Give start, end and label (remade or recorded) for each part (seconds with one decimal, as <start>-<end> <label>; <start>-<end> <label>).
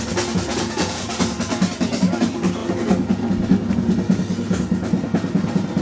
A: 0.0-0.5 recorded; 0.5-1.1 remade; 1.1-5.8 recorded